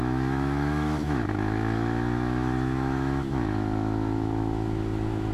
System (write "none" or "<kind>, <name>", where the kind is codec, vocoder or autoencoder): autoencoder, DAC-VAE